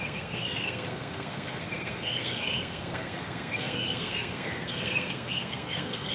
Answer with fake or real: fake